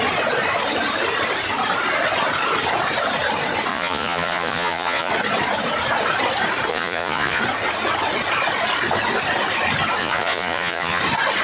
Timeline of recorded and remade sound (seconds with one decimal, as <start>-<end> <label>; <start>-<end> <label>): 0.0-3.7 recorded; 3.7-5.1 remade; 5.1-6.7 recorded; 6.7-7.4 remade; 7.4-10.0 recorded; 10.0-11.0 remade; 11.0-11.4 recorded